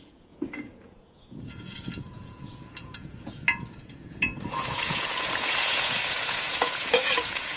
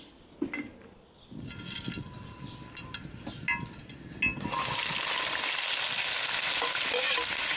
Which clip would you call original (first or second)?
second